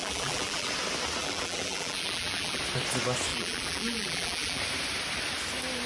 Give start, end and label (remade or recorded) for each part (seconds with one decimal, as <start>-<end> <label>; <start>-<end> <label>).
0.0-0.7 remade; 0.7-1.2 recorded; 1.2-2.6 remade; 2.6-3.3 recorded; 3.3-4.6 remade; 4.6-5.9 recorded